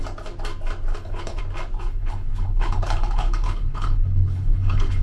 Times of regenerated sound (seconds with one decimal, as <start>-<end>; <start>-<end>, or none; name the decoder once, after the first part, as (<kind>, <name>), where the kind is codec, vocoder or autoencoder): 0.9-1.4 (codec, HILCodec); 1.9-5.0